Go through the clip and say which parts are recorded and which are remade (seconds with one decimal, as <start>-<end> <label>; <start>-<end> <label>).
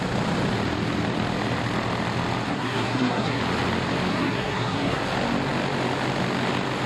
0.0-2.5 recorded; 2.5-3.4 remade; 3.4-4.1 recorded; 4.1-5.0 remade; 5.0-6.9 recorded